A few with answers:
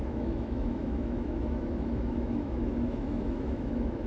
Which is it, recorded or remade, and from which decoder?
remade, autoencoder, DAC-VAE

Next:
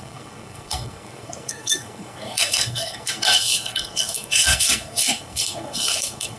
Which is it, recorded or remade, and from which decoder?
remade, codec, SNAC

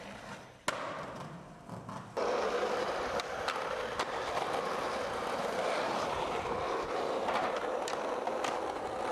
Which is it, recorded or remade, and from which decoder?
recorded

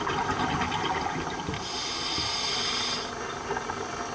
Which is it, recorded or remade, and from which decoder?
recorded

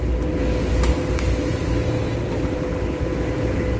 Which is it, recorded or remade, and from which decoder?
recorded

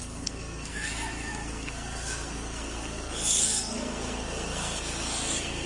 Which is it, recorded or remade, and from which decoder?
remade, codec, SNAC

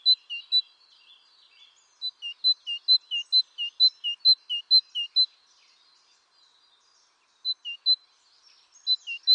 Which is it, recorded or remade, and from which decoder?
recorded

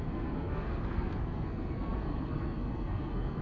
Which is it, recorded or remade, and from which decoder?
remade, codec, SNAC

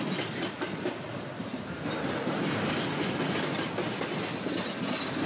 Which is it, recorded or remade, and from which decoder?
recorded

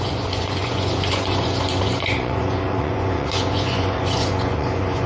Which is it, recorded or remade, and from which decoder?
remade, vocoder, Vocos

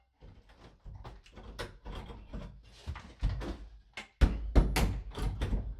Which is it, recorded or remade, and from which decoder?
recorded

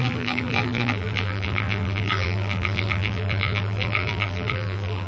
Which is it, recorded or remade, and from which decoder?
remade, vocoder, BigVGAN v2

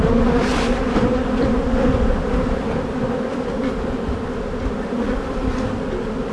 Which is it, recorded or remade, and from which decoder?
recorded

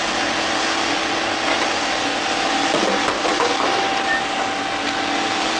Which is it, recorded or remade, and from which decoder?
recorded